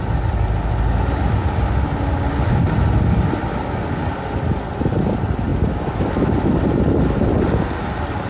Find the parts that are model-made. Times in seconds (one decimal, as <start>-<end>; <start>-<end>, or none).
none